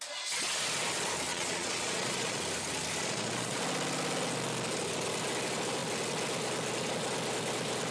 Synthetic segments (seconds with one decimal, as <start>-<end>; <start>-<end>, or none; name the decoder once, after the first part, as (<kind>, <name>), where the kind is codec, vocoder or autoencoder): 1.3-2.4 (vocoder, Vocos); 3.0-3.6